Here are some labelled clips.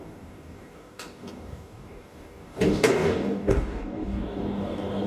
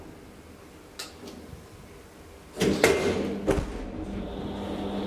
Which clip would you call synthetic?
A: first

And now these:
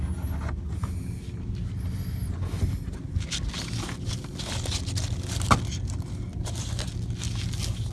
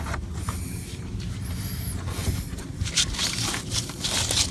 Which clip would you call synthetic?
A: second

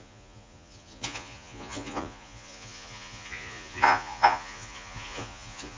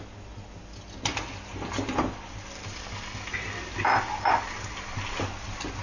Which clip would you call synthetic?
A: first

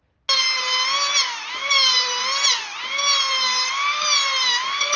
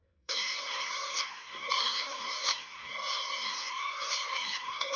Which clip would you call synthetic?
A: second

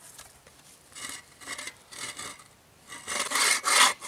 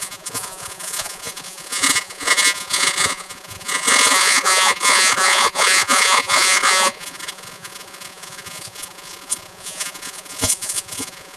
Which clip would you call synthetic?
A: second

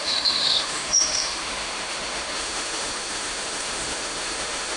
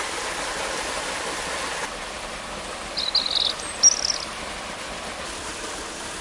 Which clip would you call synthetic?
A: first